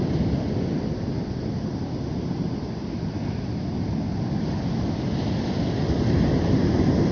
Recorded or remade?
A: recorded